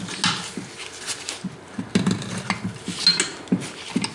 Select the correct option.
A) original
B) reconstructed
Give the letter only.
A